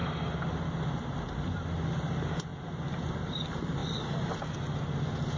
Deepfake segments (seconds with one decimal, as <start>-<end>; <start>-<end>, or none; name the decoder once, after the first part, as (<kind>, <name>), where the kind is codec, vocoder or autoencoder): none

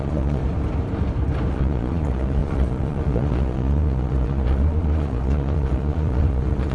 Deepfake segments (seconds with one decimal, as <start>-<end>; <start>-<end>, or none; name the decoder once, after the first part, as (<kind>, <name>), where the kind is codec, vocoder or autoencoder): 0.0-0.4 (vocoder, Vocos); 1.5-6.7

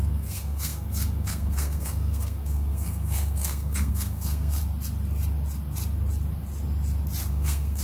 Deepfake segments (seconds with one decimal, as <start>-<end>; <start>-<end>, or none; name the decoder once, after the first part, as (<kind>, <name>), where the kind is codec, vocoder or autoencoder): 0.0-4.6 (codec, SNAC); 7.3-7.8

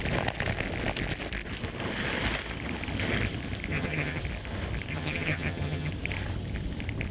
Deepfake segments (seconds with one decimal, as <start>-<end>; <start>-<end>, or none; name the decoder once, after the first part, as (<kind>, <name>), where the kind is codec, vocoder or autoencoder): 3.7-4.2 (vocoder, HiFi-GAN); 4.9-5.9